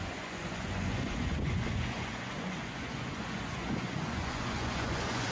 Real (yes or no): no